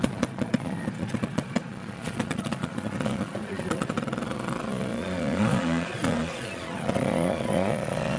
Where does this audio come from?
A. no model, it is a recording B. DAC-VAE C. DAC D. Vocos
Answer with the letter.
D